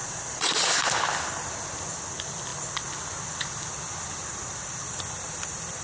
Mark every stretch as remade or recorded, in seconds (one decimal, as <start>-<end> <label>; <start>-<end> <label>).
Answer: 0.0-0.6 remade; 0.6-5.8 recorded